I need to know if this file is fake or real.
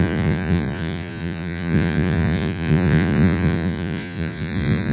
fake